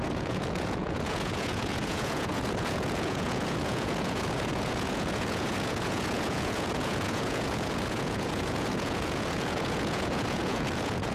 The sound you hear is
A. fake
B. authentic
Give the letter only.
A